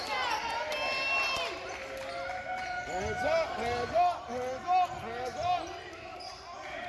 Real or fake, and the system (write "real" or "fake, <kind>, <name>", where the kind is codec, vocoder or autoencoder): real